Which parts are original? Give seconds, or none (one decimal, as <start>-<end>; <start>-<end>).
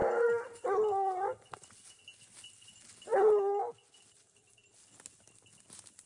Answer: 0.0-6.1